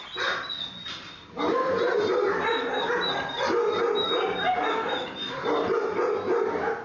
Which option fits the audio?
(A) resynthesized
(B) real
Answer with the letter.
B